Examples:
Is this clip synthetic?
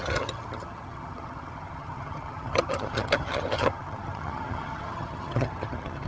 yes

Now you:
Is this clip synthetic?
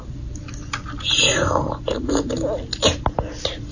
no